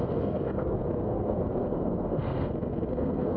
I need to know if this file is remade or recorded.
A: remade